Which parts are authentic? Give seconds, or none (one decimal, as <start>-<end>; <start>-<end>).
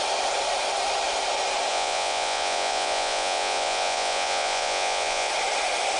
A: 0.0-1.7; 5.3-6.0